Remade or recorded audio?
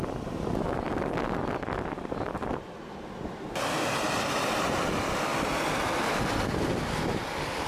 recorded